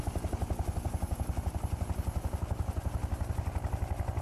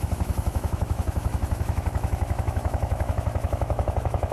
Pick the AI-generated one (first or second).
second